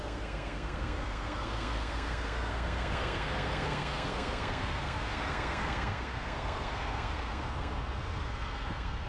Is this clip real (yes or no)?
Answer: no